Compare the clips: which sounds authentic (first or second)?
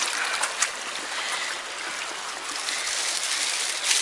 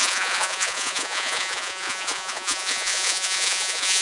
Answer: first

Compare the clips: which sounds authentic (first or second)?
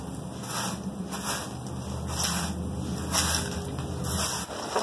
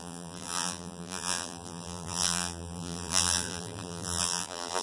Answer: first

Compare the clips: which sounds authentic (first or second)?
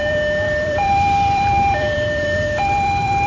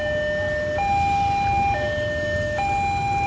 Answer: second